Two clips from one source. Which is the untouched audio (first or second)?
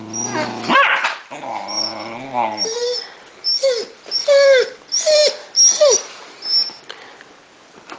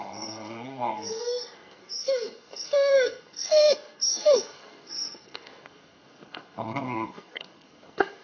first